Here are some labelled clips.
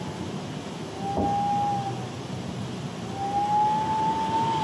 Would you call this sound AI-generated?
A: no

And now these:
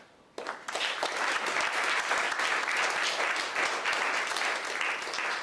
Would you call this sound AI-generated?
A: no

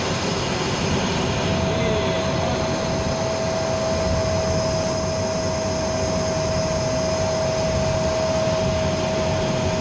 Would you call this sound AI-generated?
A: no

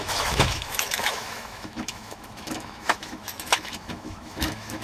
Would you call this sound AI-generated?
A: yes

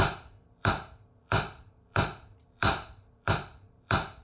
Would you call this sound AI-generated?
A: yes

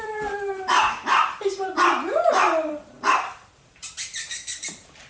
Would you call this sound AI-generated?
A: yes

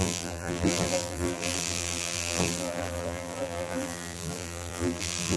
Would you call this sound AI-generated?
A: yes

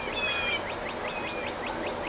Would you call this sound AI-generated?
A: no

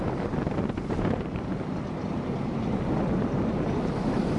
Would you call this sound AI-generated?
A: no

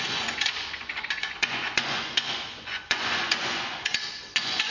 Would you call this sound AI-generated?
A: yes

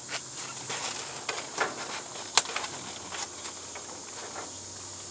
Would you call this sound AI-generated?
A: no